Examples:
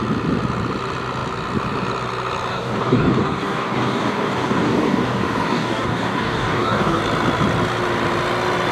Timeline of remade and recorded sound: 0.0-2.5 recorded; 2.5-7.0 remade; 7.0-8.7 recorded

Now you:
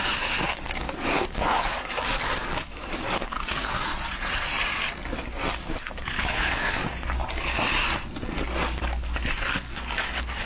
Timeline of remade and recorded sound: 0.0-3.9 remade; 3.9-5.9 recorded; 5.9-6.8 remade; 6.8-9.4 recorded; 9.4-10.5 remade

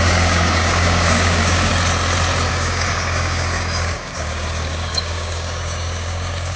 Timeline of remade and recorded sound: 0.0-1.7 remade; 1.7-2.5 recorded; 2.5-6.6 remade